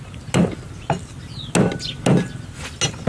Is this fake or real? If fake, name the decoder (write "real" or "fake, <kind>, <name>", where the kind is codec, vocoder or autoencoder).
real